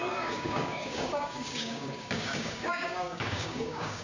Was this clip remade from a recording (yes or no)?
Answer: yes